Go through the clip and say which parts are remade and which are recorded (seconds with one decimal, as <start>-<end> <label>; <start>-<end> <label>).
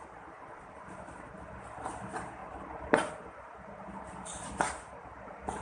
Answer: 0.0-5.6 remade